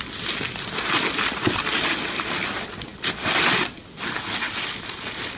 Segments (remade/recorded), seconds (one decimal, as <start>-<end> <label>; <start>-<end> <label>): 0.0-5.4 recorded